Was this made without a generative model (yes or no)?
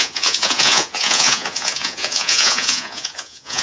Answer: no